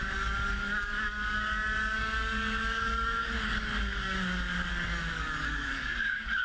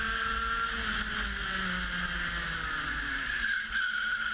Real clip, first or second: second